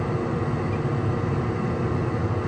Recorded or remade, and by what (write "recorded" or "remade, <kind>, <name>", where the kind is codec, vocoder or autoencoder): recorded